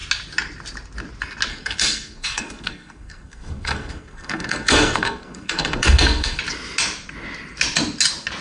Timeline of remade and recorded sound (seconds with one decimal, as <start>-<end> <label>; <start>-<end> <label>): 0.0-1.5 recorded; 1.5-6.4 remade; 6.4-8.4 recorded